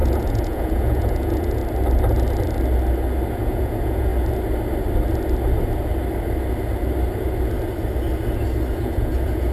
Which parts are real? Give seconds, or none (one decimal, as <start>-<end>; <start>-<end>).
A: 1.6-3.3; 4.1-8.7